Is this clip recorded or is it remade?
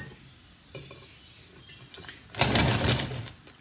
recorded